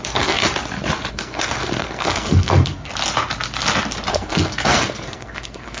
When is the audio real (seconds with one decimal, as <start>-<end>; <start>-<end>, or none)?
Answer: 0.4-1.1; 2.9-4.1